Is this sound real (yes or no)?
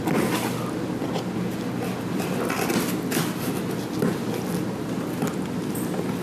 yes